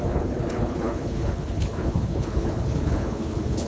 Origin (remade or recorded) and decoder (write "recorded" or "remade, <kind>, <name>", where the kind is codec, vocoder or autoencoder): remade, codec, HILCodec